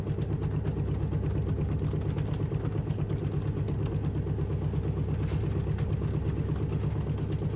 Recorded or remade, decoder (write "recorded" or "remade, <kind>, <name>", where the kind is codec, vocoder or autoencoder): recorded